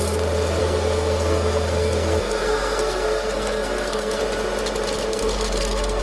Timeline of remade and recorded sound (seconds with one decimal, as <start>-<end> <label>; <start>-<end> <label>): 0.0-0.6 recorded; 0.6-4.2 remade; 4.2-5.1 recorded; 5.1-6.0 remade